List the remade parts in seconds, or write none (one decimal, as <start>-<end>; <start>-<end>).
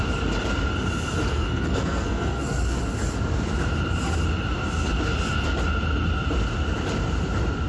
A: 1.3-2.8